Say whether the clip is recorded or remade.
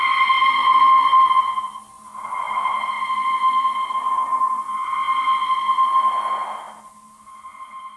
recorded